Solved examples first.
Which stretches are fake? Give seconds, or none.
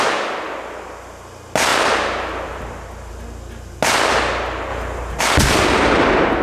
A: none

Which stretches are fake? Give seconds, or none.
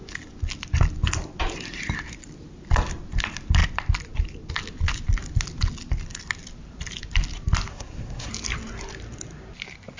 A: 7.7-8.3 (codec, SNAC)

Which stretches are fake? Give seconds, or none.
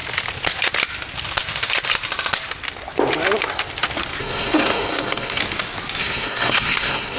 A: 4.2-5.4 (codec, SNAC); 6.0-7.2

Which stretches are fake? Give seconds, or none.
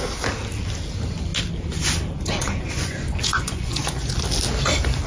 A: 2.4-4.1 (vocoder, Vocos)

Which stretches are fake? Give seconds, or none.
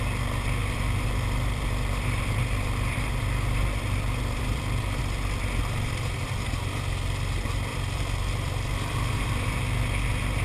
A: 0.6-5.0 (vocoder, BigVGAN v2); 7.7-9.6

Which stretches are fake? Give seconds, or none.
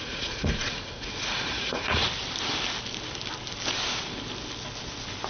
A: 0.0-2.0 (vocoder, Vocos)